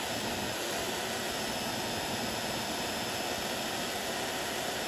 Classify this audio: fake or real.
real